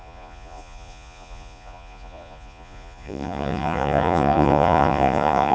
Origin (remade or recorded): remade